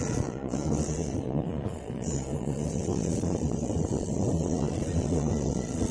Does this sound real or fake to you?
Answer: fake